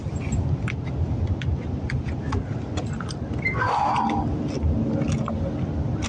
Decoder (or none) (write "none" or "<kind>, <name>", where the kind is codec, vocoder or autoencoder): none